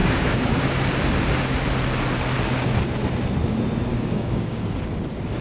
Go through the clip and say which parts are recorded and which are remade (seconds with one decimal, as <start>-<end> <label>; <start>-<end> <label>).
0.0-0.8 remade; 0.8-3.9 recorded; 3.9-4.6 remade; 4.6-5.4 recorded